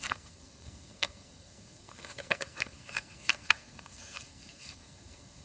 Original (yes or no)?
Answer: no